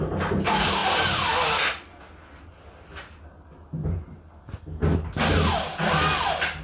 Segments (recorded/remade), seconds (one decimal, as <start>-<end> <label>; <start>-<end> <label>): 0.0-3.8 recorded; 3.8-4.3 remade; 4.3-6.6 recorded